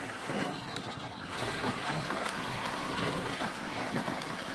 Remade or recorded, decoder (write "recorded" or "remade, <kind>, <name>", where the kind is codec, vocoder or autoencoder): remade, codec, SNAC